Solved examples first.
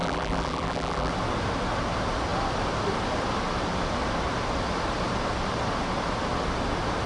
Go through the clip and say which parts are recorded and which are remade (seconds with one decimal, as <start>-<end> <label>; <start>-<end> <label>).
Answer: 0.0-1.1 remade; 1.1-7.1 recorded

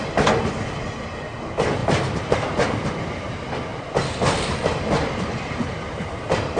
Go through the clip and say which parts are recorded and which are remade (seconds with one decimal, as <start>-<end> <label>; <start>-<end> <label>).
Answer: 0.0-1.8 recorded; 1.8-3.3 remade; 3.3-3.7 recorded; 3.7-6.6 remade

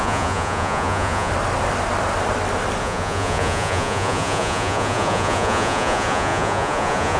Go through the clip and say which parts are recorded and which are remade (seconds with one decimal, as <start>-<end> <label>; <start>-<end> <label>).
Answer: 0.0-1.3 remade; 1.3-2.8 recorded; 2.8-7.2 remade